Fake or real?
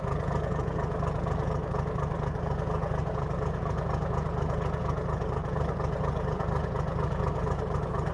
fake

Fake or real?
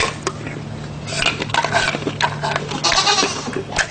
real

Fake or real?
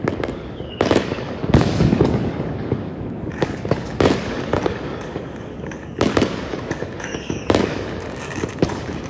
fake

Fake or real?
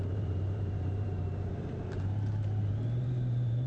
fake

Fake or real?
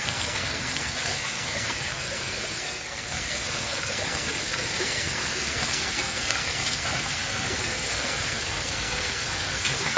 fake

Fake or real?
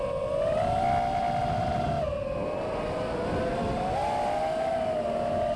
real